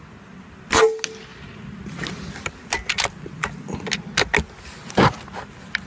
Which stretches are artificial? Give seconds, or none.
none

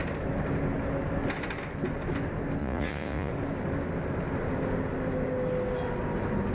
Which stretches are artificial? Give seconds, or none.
2.6-3.3

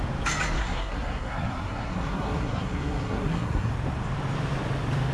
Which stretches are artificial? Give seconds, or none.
0.6-3.7

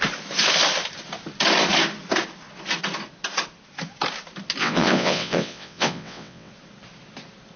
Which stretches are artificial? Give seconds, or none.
4.6-6.5

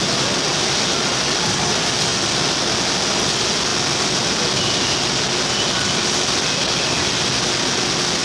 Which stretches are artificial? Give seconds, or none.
none

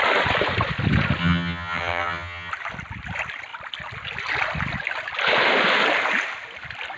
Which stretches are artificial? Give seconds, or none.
1.2-2.5

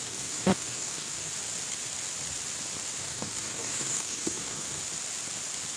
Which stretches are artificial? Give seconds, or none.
0.0-1.3; 3.0-4.8